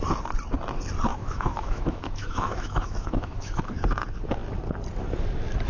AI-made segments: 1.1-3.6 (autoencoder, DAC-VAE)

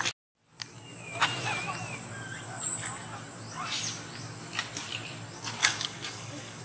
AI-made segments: 5.6-6.6 (codec, DAC)